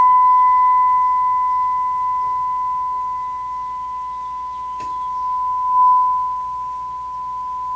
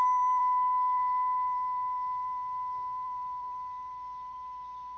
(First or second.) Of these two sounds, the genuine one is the first